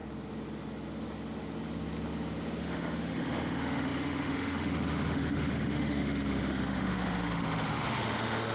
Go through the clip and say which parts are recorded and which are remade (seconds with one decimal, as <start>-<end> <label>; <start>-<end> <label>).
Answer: 0.0-2.6 recorded; 2.6-8.5 remade